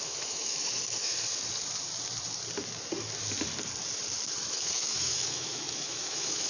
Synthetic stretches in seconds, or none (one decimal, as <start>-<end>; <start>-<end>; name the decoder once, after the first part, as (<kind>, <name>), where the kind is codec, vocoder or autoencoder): 0.0-1.1 (autoencoder, DAC-VAE); 4.4-6.5